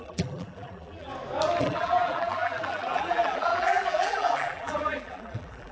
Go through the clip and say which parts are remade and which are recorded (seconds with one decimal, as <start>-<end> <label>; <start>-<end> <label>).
0.0-1.1 remade; 1.1-1.6 recorded; 1.6-5.7 remade